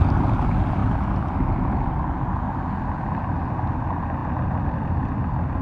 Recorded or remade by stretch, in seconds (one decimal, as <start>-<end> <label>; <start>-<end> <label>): 0.0-5.6 recorded